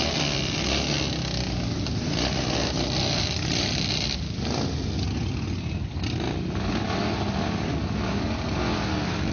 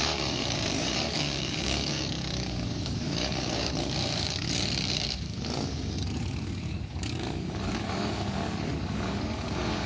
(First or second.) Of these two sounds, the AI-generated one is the second